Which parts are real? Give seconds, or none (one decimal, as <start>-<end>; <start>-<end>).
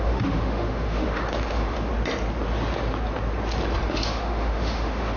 1.9-3.9